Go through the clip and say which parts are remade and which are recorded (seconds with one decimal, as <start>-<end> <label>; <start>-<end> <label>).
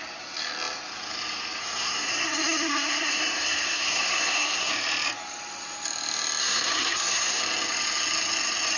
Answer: 0.0-1.6 recorded; 1.6-4.7 remade; 4.7-6.4 recorded; 6.4-7.4 remade; 7.4-8.8 recorded